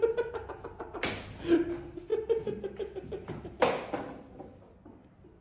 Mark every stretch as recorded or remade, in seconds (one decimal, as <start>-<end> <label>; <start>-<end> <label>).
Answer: 0.0-5.4 recorded